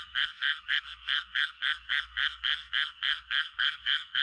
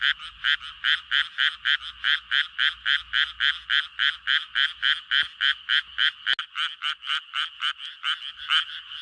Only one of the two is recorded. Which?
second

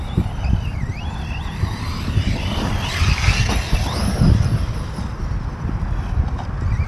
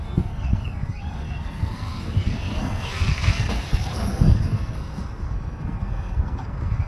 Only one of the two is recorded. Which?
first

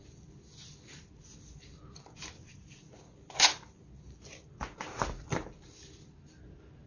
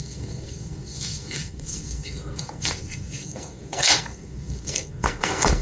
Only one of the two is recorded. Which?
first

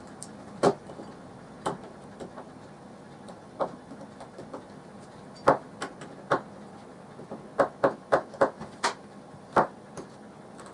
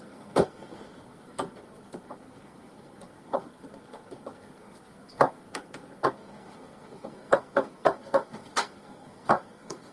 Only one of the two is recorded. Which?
first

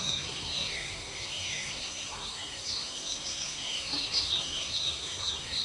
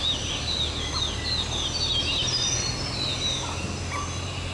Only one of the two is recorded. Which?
second